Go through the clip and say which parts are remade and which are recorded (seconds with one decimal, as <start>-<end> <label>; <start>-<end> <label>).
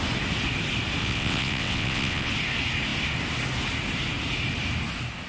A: 0.0-1.0 recorded; 1.0-2.3 remade; 2.3-5.3 recorded